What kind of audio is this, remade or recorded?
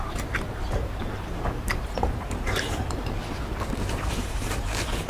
remade